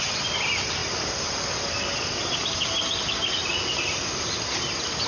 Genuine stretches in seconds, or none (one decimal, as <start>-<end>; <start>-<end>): 0.0-5.1